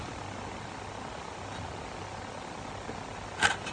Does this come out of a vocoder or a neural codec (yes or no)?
no